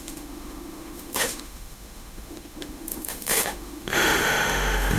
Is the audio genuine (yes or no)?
no